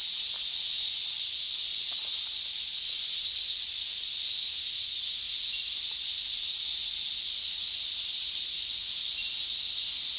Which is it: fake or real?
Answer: real